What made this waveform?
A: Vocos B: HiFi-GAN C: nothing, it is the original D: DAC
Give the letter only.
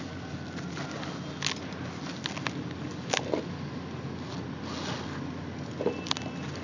C